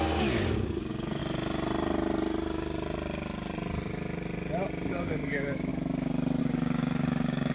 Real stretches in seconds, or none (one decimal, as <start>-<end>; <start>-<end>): 1.2-4.9; 5.7-6.4